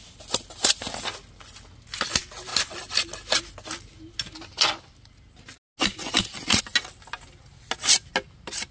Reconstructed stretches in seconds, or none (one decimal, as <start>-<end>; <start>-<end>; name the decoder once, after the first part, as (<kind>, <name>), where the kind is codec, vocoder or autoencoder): none